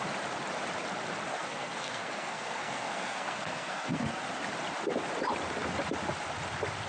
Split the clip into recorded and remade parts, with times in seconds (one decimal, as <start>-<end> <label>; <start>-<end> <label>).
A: 0.0-1.3 recorded; 1.3-4.2 remade; 4.2-6.9 recorded